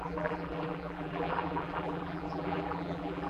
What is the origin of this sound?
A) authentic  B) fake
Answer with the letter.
B